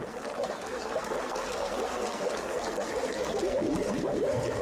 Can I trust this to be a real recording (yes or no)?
no